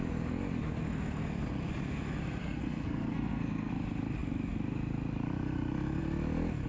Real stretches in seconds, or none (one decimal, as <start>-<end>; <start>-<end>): 0.0-2.4; 3.7-6.7